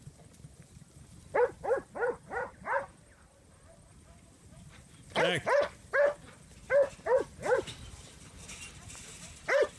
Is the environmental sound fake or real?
real